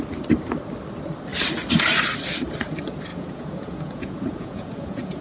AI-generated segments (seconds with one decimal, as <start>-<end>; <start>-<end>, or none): 3.1-5.2